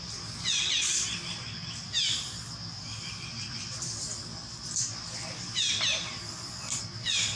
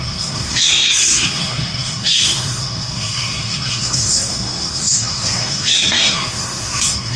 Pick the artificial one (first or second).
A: second